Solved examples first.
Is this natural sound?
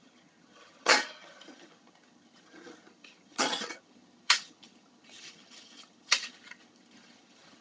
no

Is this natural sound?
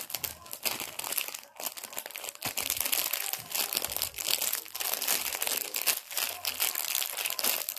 yes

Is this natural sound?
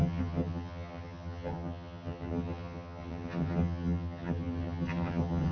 no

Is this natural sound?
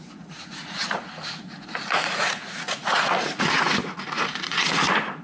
no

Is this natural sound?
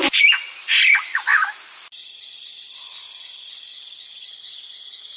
yes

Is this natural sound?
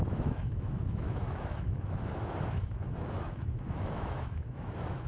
no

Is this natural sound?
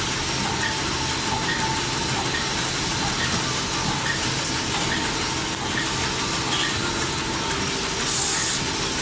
yes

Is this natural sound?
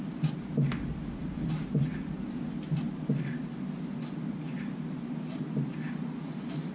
yes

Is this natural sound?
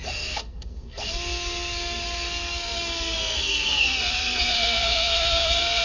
no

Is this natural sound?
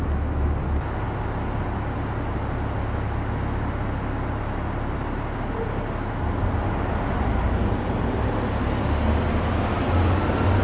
yes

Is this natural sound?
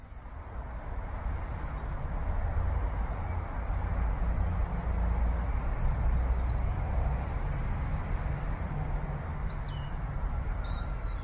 yes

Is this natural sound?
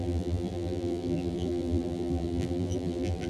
no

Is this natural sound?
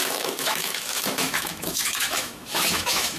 no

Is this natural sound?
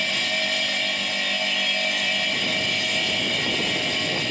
yes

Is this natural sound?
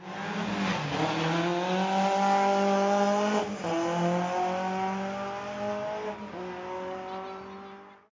yes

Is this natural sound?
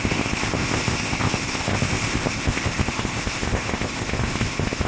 no